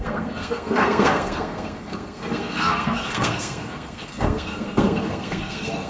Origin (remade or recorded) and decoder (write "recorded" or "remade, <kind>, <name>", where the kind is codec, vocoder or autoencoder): remade, codec, SNAC